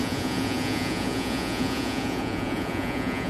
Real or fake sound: fake